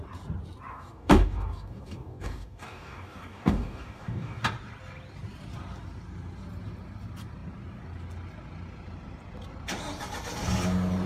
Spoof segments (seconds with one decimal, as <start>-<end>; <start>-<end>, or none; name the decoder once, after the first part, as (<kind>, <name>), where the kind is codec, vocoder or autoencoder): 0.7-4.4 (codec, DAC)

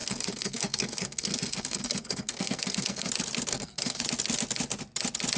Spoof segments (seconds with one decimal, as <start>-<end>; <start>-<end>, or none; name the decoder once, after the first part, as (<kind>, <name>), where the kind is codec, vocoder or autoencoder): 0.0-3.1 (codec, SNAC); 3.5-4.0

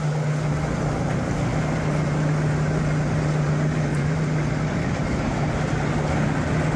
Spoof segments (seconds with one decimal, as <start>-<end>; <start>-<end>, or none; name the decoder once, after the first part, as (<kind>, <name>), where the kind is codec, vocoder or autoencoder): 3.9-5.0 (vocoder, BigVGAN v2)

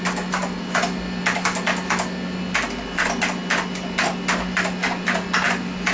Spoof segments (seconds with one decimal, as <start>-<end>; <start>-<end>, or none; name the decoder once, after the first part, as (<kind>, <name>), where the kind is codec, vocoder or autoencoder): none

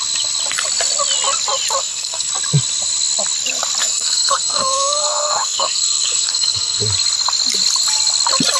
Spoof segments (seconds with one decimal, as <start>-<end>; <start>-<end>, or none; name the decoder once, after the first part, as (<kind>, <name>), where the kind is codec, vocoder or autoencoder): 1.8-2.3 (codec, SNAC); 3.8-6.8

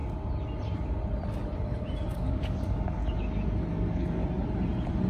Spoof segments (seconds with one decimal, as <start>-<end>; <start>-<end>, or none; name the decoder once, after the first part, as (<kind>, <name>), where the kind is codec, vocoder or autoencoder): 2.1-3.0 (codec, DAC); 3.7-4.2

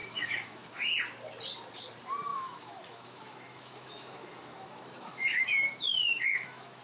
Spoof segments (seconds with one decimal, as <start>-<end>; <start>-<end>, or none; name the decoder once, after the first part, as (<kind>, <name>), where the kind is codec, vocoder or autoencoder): 0.0-0.9 (autoencoder, DAC-VAE); 2.3-6.8

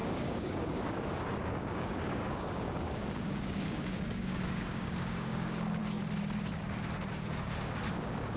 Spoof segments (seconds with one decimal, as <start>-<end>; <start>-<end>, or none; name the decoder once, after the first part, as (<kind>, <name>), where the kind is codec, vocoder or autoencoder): 0.0-5.8 (codec, DAC); 7.1-8.4